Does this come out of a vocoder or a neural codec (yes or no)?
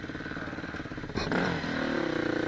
no